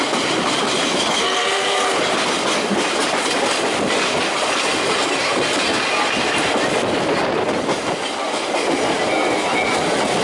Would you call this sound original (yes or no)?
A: yes